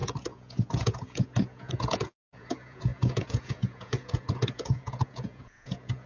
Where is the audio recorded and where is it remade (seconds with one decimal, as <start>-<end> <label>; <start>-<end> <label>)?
0.0-6.1 remade